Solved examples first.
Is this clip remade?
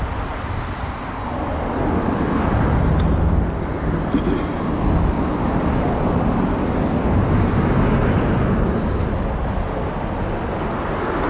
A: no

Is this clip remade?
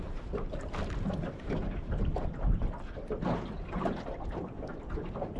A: no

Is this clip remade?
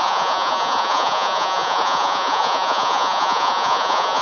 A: yes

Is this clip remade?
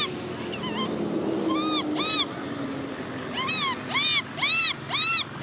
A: no